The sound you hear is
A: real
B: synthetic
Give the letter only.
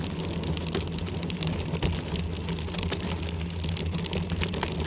A